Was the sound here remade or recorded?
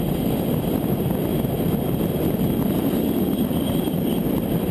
recorded